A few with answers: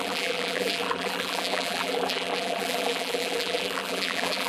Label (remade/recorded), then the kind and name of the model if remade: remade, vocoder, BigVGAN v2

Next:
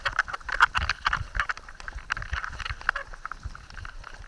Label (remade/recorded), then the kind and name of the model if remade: recorded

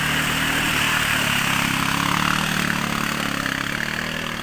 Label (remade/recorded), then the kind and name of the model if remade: recorded